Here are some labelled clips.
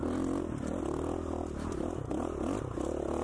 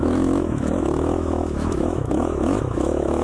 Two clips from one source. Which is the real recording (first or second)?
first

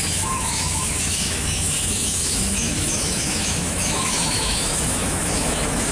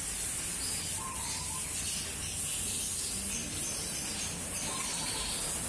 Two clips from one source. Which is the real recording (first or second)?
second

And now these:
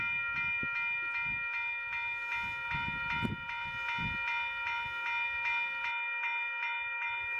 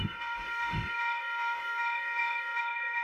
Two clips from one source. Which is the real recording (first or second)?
first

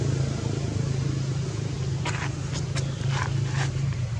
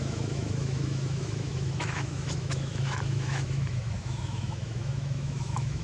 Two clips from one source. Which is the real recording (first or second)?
first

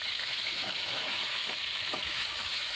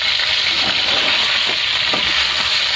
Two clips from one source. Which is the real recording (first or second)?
second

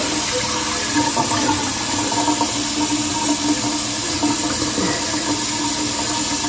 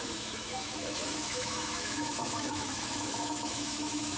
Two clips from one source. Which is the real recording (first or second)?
first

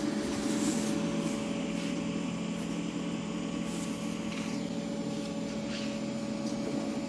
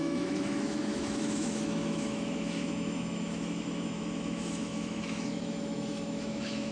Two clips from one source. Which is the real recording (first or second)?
first